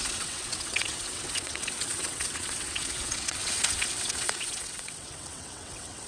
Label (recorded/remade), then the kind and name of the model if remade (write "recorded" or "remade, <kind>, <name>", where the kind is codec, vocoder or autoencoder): remade, vocoder, WaveNeXt